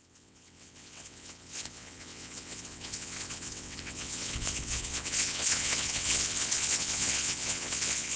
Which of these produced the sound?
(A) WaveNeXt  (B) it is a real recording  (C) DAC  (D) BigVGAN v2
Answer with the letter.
A